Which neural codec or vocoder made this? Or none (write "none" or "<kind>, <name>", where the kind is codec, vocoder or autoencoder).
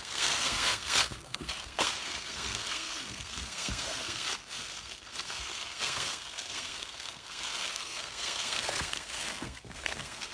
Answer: codec, SNAC